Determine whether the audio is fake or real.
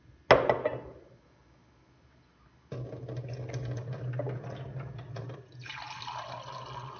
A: real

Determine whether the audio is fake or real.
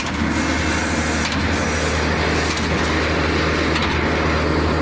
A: real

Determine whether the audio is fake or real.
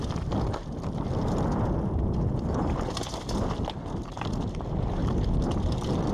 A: real